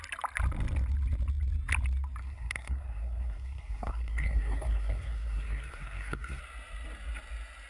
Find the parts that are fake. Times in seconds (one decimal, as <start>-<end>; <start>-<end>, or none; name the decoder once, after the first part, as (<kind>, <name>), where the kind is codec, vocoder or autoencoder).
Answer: 2.2-6.4 (codec, SNAC)